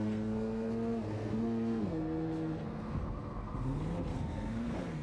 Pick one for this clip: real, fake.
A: fake